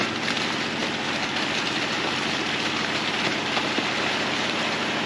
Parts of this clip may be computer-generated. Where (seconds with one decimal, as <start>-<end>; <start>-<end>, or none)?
none